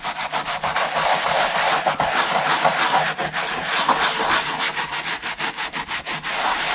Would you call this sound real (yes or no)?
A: yes